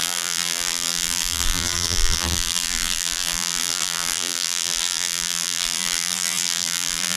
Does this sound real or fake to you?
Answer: fake